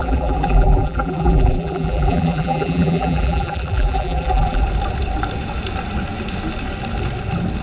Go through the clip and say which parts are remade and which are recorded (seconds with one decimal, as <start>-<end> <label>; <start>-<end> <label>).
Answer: 0.0-4.6 remade; 4.6-7.6 recorded